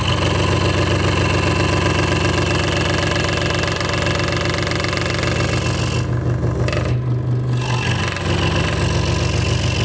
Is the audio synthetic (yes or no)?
no